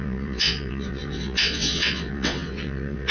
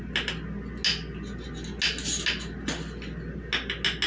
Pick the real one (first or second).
second